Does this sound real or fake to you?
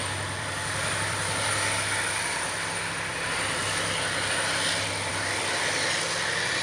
fake